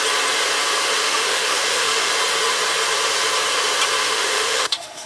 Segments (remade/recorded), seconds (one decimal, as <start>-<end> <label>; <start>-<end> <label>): 0.0-1.0 recorded; 1.0-2.1 remade; 2.1-4.0 recorded; 4.0-5.1 remade